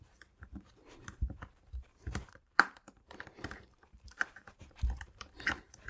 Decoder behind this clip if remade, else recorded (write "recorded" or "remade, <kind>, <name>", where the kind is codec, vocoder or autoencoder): remade, vocoder, BigVGAN v2